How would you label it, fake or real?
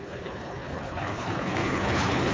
fake